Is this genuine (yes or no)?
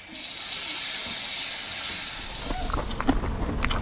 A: yes